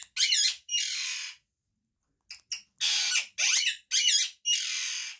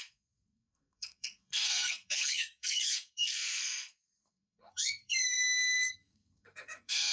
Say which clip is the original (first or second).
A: first